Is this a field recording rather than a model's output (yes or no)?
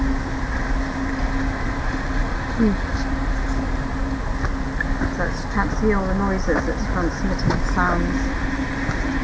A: yes